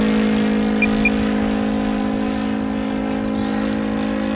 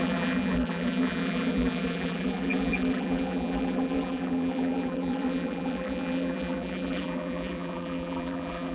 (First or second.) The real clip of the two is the first